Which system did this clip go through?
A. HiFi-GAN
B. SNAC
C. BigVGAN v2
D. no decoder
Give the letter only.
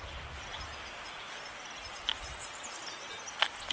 D